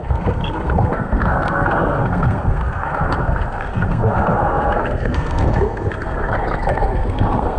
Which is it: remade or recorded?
remade